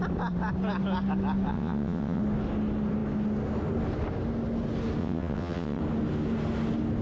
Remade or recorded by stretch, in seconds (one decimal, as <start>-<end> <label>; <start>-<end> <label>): 0.0-1.5 recorded; 1.5-2.2 remade; 2.2-5.0 recorded; 5.0-5.8 remade; 5.8-7.0 recorded